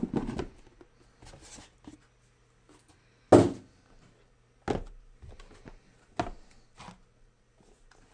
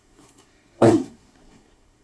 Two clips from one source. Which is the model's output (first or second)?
second